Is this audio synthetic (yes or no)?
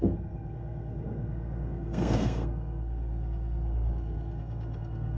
yes